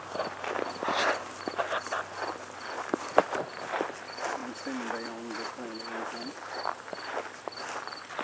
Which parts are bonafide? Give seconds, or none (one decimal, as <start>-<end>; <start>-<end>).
0.0-8.2